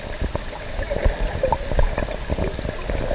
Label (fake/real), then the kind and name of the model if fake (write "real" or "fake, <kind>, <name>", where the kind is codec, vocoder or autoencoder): real